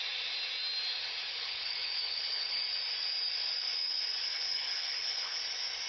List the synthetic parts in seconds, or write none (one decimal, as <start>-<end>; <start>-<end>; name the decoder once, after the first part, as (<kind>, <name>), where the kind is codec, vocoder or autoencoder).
1.3-2.6 (codec, HILCodec); 4.2-5.4